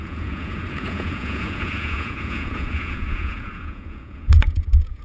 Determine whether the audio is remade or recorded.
remade